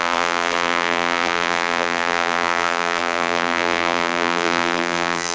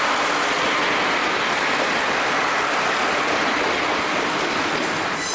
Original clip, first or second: second